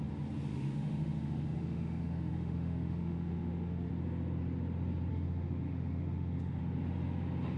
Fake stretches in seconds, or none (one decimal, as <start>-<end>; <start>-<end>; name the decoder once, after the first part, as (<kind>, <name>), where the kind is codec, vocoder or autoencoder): 0.5-3.9 (autoencoder, DAC-VAE); 5.1-6.6